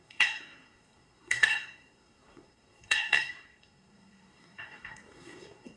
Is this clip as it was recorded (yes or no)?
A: no